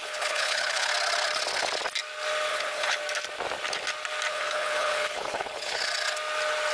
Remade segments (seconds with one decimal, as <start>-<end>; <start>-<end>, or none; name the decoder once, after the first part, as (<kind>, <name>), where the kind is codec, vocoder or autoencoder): 0.0-0.9 (codec, HILCodec); 2.5-3.0; 4.3-5.8